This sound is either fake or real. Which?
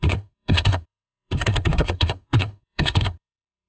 fake